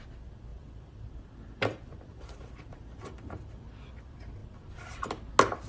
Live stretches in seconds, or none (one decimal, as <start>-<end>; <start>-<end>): 0.0-0.5; 3.9-4.4; 5.3-5.7